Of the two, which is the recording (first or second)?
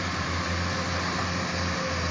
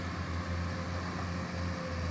second